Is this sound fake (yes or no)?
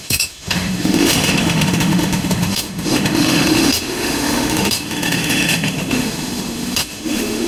yes